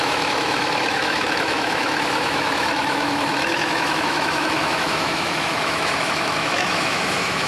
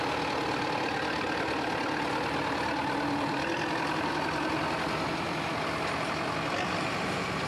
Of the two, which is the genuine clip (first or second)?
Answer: second